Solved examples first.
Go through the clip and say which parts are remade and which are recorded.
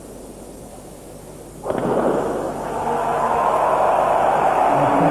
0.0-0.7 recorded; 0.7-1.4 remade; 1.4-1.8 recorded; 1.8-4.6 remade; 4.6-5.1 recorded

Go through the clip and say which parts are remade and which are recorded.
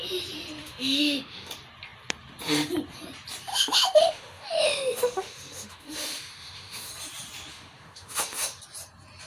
0.0-0.6 recorded; 0.6-1.5 remade; 1.5-3.5 recorded; 3.5-6.9 remade; 6.9-7.5 recorded; 7.5-8.6 remade; 8.6-9.3 recorded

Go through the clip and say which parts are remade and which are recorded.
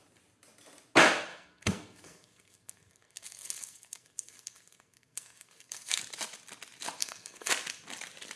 0.0-1.3 recorded; 1.3-6.0 remade; 6.0-7.0 recorded; 7.0-7.5 remade; 7.5-8.4 recorded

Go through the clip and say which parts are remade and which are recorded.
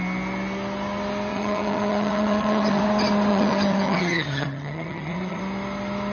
0.0-1.3 recorded; 1.3-2.8 remade; 2.8-3.3 recorded; 3.3-5.4 remade; 5.4-6.1 recorded